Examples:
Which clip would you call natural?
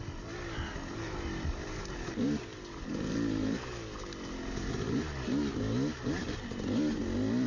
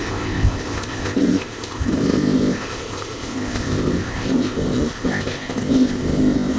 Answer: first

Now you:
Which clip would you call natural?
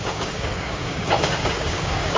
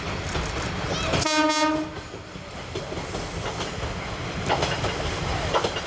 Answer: second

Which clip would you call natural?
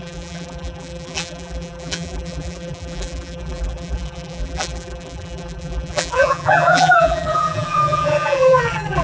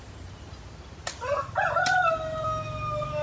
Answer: second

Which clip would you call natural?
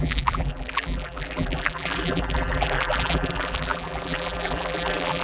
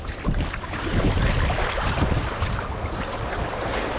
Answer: second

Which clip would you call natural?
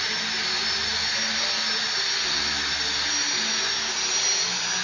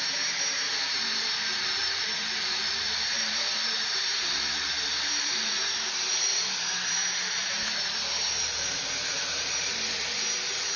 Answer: first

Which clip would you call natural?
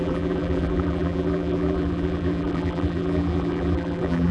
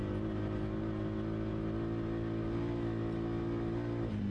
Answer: second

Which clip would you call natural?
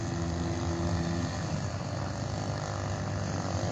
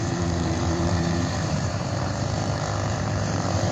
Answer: first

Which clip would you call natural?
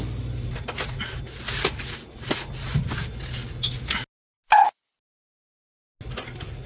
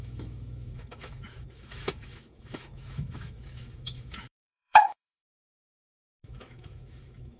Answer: first